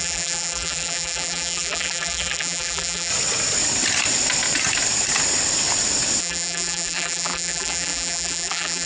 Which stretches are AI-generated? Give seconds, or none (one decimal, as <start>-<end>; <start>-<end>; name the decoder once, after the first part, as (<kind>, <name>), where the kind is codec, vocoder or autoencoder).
0.0-3.1 (vocoder, BigVGAN v2); 6.2-8.9